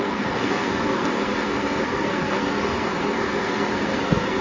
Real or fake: fake